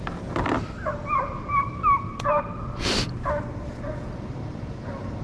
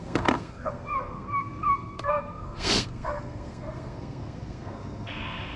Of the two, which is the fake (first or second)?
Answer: second